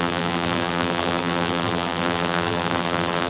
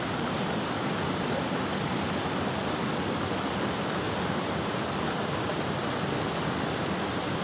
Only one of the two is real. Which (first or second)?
second